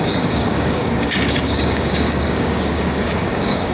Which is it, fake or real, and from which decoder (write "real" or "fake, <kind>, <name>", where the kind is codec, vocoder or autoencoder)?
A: fake, codec, DAC